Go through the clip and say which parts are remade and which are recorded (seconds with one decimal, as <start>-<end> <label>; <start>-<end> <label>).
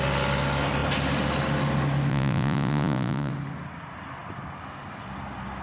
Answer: 0.0-2.1 recorded; 2.1-3.3 remade; 3.3-5.6 recorded